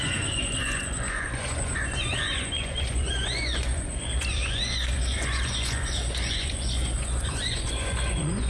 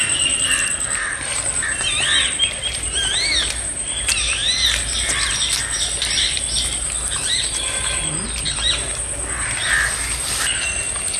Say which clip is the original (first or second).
second